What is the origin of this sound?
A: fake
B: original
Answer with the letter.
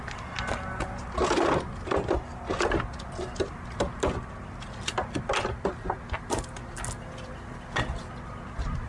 B